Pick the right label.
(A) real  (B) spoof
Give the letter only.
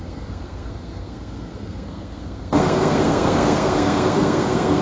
B